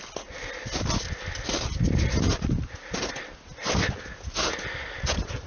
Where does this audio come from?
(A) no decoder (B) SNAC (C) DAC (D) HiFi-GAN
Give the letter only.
A